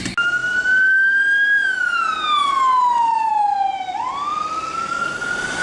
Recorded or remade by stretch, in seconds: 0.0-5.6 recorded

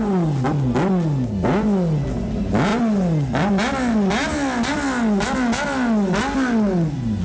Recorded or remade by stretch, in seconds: 0.0-7.2 recorded

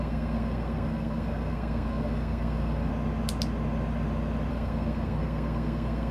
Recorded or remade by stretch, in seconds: 0.0-2.9 remade; 2.9-4.5 recorded; 4.5-6.1 remade